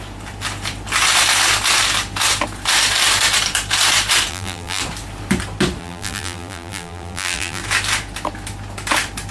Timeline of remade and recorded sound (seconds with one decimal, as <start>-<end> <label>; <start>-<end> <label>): 0.0-4.3 recorded; 4.3-4.8 remade; 4.8-5.8 recorded; 5.8-7.6 remade; 7.6-9.3 recorded

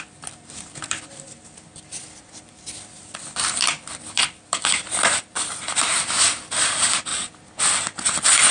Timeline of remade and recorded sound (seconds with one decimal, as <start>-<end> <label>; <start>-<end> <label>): 0.0-7.1 remade; 7.1-7.6 recorded; 7.6-8.5 remade

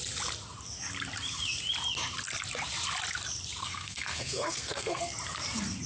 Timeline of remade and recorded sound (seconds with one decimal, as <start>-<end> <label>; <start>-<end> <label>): 0.0-3.6 recorded; 3.6-5.0 remade; 5.0-5.9 recorded